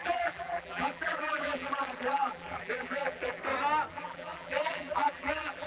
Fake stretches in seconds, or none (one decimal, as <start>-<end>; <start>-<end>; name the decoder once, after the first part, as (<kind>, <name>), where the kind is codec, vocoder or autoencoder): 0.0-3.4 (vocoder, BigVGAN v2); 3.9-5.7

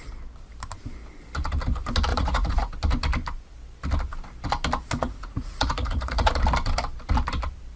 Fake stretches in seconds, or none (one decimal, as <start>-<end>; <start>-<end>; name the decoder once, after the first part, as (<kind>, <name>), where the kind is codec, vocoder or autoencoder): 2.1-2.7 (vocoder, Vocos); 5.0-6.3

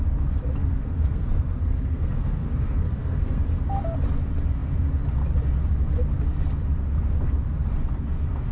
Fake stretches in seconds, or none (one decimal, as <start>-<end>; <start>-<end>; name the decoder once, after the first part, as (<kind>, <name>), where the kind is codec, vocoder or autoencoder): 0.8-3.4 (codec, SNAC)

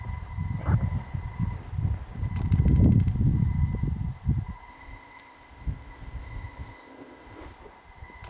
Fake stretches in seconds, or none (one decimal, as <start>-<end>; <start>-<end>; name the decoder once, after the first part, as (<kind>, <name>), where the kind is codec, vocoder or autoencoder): 4.7-7.4 (codec, ZipCodec)

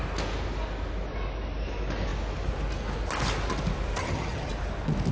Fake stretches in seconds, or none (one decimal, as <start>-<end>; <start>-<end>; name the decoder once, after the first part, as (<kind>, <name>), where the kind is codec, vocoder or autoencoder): 4.0-4.5 (vocoder, HiFi-GAN)

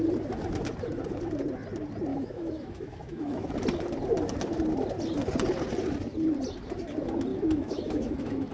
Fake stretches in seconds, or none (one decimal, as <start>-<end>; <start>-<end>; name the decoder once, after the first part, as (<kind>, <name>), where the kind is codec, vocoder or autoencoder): 2.1-3.5 (autoencoder, DAC-VAE); 7.3-8.5

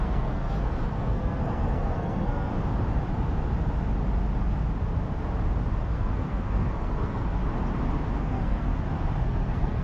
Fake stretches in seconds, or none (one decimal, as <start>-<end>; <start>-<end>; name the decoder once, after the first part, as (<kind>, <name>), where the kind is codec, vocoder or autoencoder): 0.0-2.5 (codec, SNAC); 5.8-7.4; 8.2-8.7; 9.2-9.8

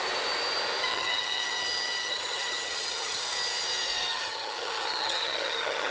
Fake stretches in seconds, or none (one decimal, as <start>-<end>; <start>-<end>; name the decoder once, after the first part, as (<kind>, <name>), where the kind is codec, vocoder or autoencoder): 0.9-3.2 (vocoder, HiFi-GAN); 4.1-5.9